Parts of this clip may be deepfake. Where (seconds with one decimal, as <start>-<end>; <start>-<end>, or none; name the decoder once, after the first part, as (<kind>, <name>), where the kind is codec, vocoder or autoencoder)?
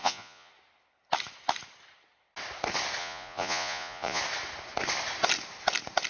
0.0-0.5 (vocoder, Vocos); 3.0-4.2